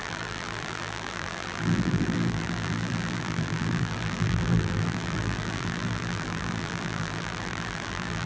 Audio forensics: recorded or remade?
remade